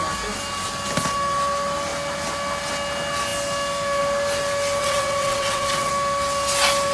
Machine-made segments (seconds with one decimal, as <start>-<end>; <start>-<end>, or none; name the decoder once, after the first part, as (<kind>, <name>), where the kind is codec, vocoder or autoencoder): 4.8-5.9 (vocoder, WaveNeXt)